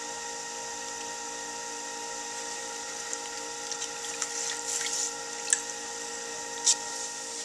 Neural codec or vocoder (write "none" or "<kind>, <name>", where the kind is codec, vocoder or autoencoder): none